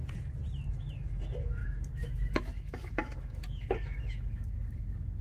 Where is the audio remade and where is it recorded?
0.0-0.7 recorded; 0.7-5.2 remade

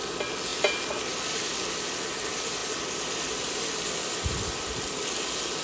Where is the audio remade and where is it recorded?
0.0-5.6 recorded

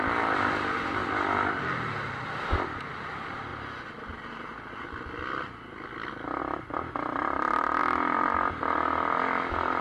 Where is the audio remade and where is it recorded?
0.0-9.8 recorded

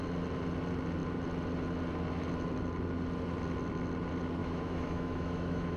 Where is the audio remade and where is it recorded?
0.0-4.4 recorded; 4.4-5.8 remade

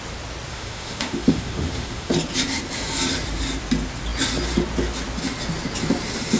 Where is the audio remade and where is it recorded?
0.0-0.5 recorded; 0.5-2.1 remade; 2.1-6.4 recorded

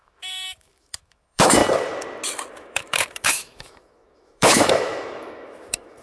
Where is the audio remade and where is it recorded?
0.0-1.6 remade; 1.6-2.5 recorded; 2.5-6.0 remade

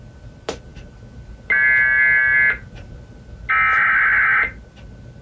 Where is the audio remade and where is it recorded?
0.0-5.2 recorded